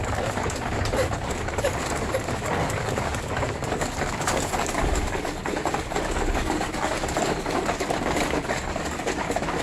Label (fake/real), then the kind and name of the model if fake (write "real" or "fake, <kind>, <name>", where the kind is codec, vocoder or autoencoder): fake, codec, DAC